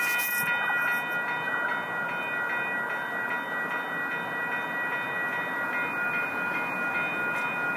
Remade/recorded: recorded